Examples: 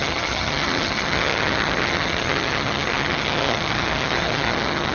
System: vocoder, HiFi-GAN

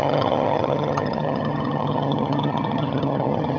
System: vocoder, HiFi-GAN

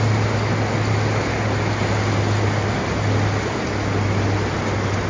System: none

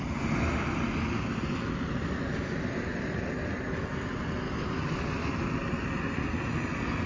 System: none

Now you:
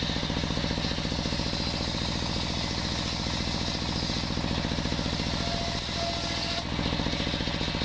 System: none